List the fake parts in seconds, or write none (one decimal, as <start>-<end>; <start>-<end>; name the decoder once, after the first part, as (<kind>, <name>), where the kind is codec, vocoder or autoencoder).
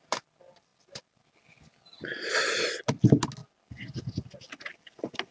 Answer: none